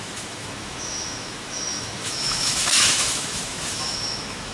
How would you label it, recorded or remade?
remade